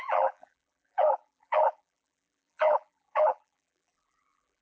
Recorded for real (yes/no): no